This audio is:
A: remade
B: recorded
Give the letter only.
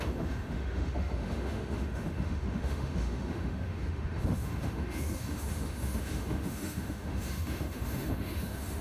A